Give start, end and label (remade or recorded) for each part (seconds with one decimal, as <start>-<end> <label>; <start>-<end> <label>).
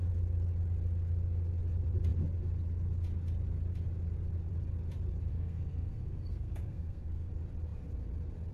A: 0.0-5.3 recorded; 5.3-7.3 remade; 7.3-8.5 recorded